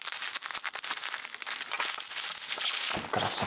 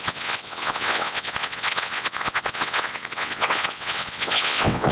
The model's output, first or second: second